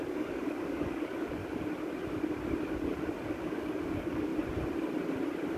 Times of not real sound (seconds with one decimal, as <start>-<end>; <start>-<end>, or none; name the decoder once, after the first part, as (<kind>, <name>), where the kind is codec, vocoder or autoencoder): 0.0-1.4 (codec, DAC); 3.4-4.3